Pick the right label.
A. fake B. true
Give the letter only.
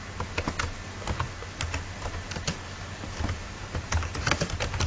B